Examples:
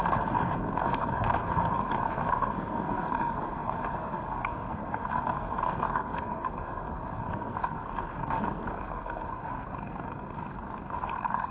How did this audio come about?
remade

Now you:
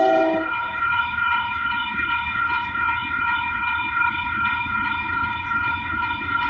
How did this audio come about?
remade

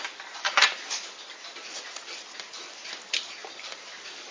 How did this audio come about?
recorded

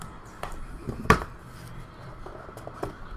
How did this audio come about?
remade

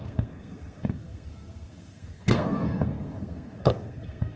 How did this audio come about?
remade